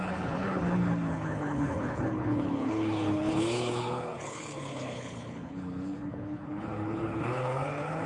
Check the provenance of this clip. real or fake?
fake